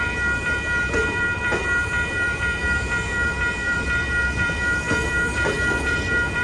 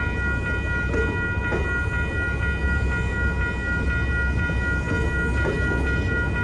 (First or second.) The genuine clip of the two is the second